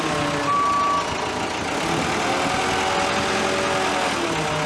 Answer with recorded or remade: recorded